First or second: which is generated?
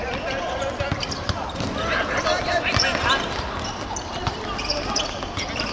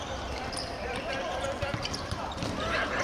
second